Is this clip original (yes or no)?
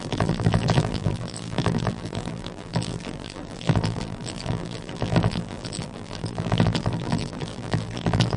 no